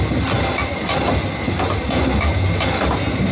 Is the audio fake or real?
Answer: real